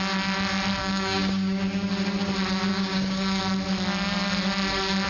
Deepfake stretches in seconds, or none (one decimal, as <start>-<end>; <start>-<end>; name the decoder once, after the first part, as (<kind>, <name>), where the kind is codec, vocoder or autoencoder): 0.8-1.6 (codec, DAC); 2.7-3.4